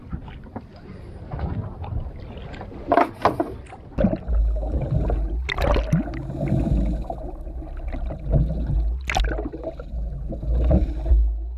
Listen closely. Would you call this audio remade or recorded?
recorded